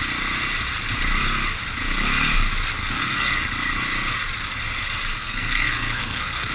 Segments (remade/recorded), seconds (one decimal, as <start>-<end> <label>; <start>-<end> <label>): 0.0-2.8 recorded; 2.8-3.5 remade; 3.5-5.2 recorded; 5.2-6.5 remade